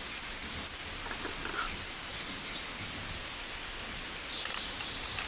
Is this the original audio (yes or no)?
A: yes